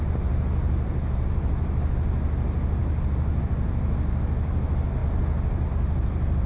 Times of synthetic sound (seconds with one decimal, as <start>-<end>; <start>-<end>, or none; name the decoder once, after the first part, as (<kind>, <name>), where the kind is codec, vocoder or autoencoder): none